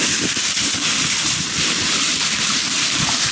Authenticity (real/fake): real